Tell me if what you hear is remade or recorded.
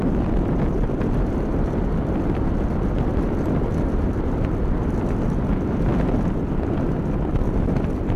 recorded